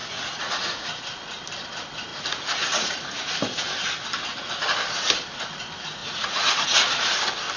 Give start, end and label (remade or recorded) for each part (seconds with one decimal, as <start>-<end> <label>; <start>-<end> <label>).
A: 0.0-1.0 remade; 1.0-2.1 recorded; 2.1-3.3 remade; 3.3-6.0 recorded; 6.0-7.1 remade; 7.1-7.6 recorded